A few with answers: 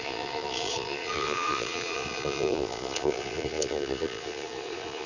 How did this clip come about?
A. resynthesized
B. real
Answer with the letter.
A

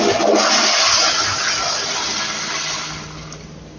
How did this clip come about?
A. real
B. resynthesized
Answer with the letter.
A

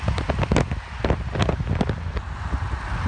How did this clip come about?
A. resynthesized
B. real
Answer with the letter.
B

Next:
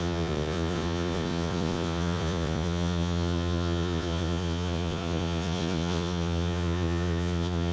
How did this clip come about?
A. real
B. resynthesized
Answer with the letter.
B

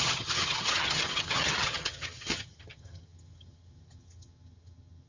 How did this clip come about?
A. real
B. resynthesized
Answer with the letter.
B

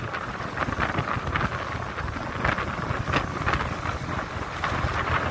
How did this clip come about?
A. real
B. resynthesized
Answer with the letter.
A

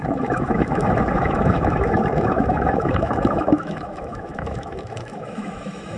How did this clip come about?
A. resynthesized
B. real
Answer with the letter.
A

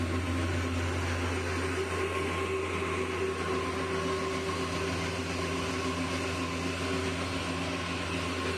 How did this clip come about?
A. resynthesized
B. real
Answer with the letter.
B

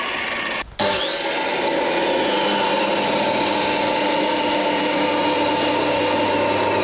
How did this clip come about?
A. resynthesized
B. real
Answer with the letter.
B